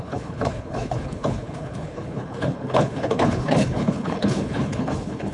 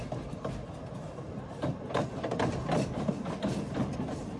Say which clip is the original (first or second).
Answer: second